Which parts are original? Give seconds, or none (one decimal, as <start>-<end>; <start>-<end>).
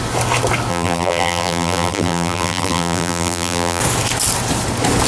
0.0-0.7; 3.8-5.1